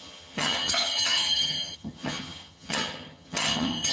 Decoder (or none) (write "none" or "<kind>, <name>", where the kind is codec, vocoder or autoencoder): vocoder, HiFi-GAN